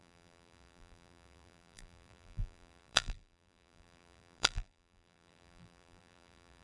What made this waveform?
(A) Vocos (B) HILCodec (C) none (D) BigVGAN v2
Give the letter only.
D